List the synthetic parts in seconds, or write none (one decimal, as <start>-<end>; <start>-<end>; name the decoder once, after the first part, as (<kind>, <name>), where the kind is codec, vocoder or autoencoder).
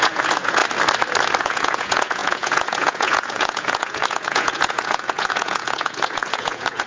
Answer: 0.0-0.6 (vocoder, Vocos); 1.4-6.9